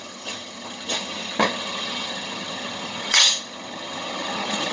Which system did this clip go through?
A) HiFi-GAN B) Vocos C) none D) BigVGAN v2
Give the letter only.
A